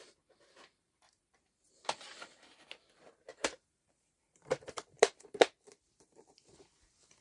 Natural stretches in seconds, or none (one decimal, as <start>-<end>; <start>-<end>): none